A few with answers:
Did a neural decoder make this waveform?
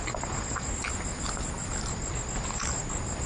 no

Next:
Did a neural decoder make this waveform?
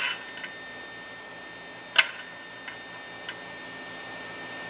no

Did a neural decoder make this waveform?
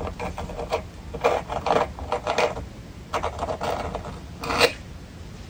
no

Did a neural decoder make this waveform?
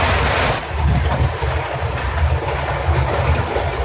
no